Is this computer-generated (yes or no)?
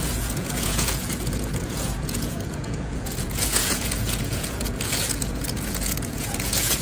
yes